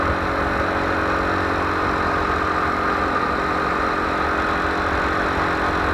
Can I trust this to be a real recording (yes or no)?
yes